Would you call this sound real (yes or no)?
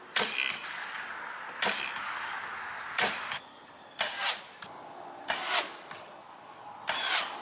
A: yes